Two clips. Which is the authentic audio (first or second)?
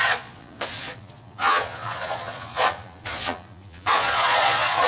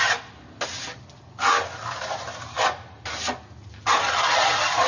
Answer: second